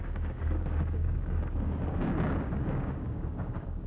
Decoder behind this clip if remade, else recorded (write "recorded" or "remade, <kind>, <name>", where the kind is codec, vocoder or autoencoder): remade, codec, DAC